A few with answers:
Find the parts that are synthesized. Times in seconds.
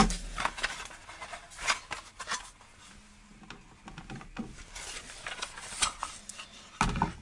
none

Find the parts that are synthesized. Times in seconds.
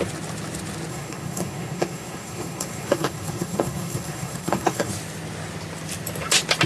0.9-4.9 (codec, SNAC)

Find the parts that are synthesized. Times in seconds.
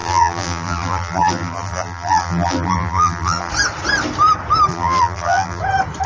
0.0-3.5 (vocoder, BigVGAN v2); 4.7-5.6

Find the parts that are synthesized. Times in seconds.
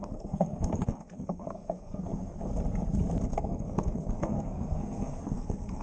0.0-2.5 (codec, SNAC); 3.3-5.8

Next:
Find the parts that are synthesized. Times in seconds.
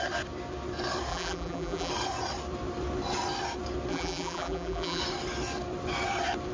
1.1-1.9 (vocoder, BigVGAN v2); 3.9-5.0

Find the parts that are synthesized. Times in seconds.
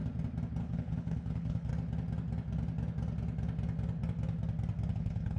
0.6-1.7 (codec, HILCodec); 4.9-5.4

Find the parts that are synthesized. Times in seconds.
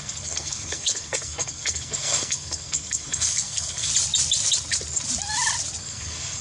0.0-3.9 (codec, SNAC); 5.8-6.4